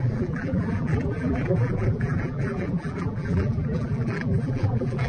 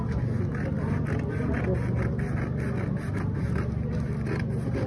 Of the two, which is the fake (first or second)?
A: first